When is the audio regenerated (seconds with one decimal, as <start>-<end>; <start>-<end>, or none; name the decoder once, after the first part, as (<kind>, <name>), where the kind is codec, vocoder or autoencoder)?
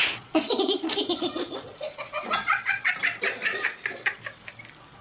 0.0-3.0 (vocoder, Vocos); 3.5-4.2